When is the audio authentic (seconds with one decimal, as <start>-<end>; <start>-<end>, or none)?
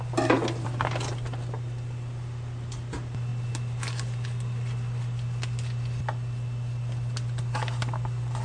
0.0-8.4